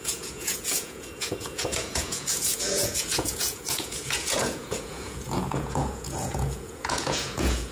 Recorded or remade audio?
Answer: remade